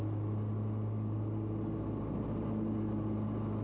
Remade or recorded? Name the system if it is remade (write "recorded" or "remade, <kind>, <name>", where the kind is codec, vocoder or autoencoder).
recorded